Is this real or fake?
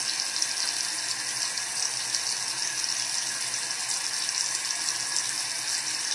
real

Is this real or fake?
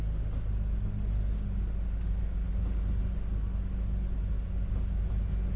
real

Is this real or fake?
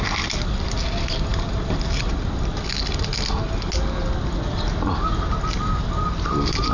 real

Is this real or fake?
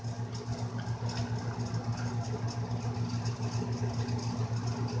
real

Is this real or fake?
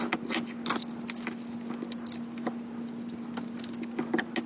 real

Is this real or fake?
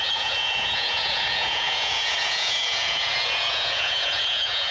fake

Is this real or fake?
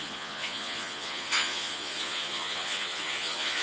fake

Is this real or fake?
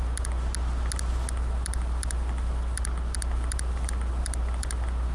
real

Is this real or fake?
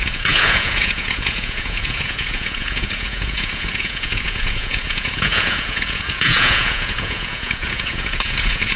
fake